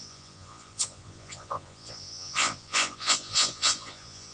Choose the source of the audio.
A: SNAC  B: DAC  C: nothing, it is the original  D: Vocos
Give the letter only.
D